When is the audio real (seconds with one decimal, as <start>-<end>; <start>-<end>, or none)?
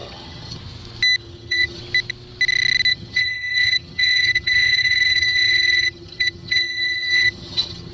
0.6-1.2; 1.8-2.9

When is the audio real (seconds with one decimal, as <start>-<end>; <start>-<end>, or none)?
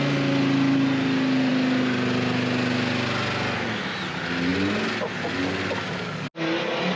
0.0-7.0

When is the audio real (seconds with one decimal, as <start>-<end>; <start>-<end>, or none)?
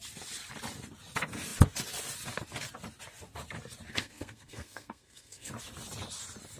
0.0-3.9; 5.5-6.6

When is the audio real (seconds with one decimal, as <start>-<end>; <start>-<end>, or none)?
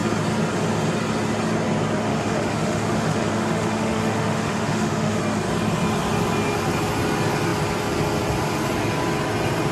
0.0-2.1; 5.2-9.7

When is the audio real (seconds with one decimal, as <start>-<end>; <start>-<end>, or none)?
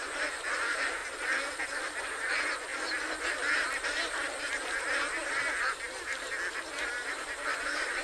1.0-2.0; 2.7-7.5